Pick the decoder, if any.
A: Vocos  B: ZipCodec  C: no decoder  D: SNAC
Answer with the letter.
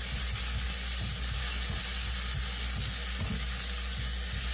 C